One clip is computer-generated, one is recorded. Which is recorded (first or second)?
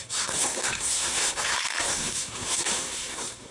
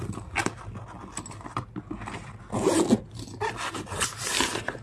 second